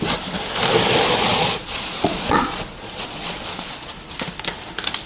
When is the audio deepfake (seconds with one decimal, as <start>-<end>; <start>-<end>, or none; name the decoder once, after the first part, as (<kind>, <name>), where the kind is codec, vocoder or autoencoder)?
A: 1.3-3.9 (vocoder, Vocos)